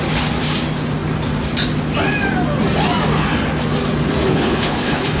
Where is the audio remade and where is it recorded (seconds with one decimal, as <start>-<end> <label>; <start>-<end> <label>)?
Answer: 0.0-4.3 recorded; 4.3-5.2 remade

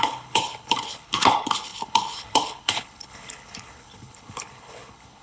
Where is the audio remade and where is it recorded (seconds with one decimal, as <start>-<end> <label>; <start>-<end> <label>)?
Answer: 0.0-5.2 remade

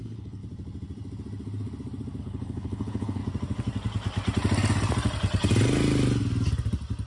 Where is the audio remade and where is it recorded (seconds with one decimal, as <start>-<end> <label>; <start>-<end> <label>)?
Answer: 0.0-0.4 remade; 0.4-2.2 recorded; 2.2-3.2 remade; 3.2-7.1 recorded

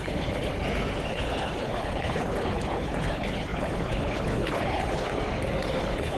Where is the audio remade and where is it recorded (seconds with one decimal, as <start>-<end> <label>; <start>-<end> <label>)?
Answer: 0.0-0.5 remade; 0.5-1.1 recorded; 1.1-5.2 remade; 5.2-5.8 recorded; 5.8-6.2 remade

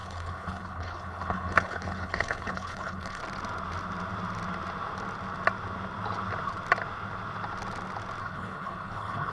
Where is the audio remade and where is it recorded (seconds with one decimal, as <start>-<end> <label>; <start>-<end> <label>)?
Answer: 0.0-3.2 remade; 3.2-8.2 recorded; 8.2-9.3 remade

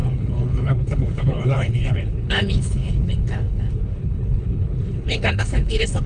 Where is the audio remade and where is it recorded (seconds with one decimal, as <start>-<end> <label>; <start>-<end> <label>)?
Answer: 0.0-6.1 remade